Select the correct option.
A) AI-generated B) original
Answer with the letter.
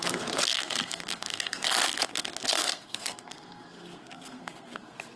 A